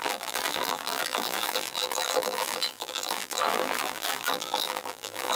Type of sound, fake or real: fake